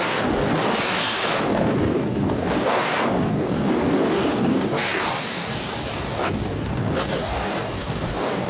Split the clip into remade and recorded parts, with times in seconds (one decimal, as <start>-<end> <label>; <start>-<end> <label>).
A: 0.0-8.5 remade